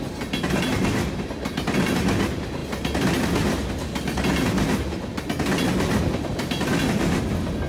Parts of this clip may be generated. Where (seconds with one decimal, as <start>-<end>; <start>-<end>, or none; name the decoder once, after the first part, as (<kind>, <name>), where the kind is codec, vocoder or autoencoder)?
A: none